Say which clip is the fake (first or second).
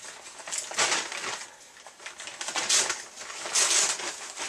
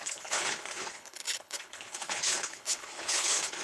second